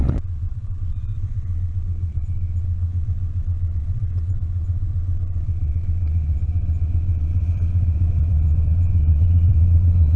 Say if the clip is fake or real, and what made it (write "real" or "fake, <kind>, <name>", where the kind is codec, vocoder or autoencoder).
fake, vocoder, Vocos